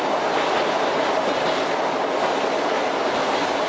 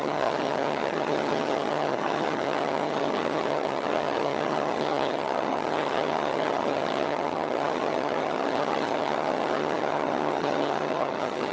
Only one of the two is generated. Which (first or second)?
second